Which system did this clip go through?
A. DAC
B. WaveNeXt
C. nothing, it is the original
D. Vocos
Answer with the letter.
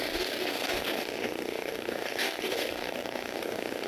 A